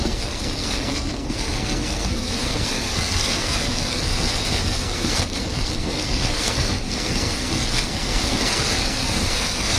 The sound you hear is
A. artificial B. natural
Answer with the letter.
A